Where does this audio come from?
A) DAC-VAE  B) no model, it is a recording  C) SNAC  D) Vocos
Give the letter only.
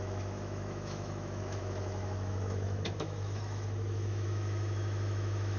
A